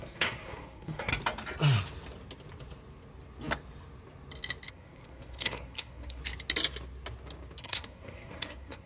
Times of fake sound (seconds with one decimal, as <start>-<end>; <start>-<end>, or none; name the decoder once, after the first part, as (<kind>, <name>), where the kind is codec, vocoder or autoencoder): 0.0-1.1 (codec, SNAC); 4.7-6.2; 7.6-8.9